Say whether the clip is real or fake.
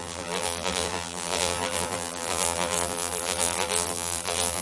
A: fake